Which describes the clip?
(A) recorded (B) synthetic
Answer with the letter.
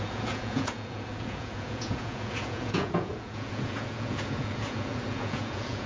B